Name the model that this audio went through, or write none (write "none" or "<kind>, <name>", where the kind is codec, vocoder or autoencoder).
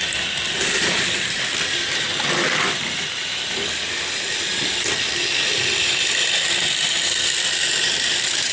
vocoder, BigVGAN v2